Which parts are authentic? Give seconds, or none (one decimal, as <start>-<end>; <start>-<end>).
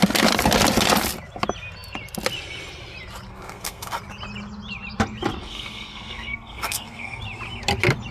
0.0-3.3; 4.0-5.4; 7.2-8.1